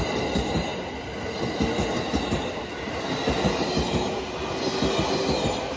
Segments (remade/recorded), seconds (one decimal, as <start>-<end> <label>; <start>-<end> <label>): 0.0-5.8 recorded